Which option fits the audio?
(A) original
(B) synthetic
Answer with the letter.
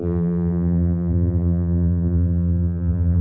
B